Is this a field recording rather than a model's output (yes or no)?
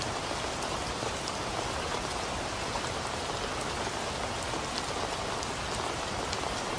yes